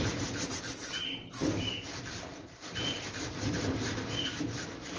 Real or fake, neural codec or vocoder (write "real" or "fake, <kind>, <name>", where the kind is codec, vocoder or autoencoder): fake, vocoder, BigVGAN v2